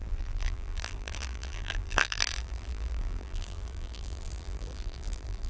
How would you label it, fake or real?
fake